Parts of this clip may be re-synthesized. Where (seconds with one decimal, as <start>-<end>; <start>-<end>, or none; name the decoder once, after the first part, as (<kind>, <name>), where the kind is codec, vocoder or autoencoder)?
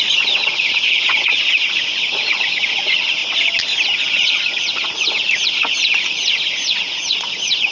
0.0-3.2 (vocoder, Vocos); 4.0-7.7